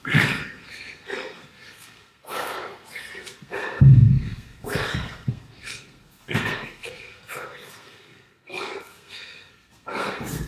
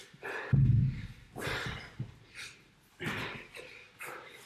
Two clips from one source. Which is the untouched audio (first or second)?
second